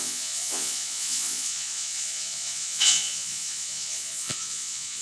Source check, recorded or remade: remade